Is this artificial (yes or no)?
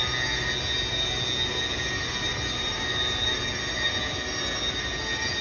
no